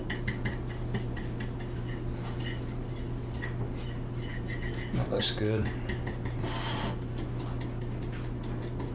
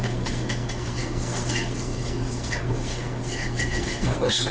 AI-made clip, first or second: second